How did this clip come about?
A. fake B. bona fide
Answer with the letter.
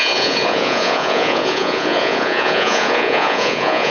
A